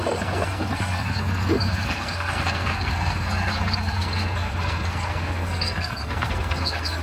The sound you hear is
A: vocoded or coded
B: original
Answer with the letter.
A